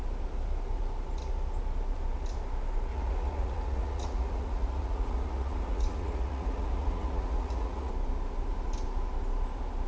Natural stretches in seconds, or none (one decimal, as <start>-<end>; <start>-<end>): 0.0-2.9; 7.9-9.9